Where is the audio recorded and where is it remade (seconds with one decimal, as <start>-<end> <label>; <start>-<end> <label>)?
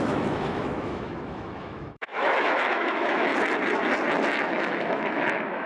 0.0-3.3 remade; 3.3-4.4 recorded; 4.4-5.7 remade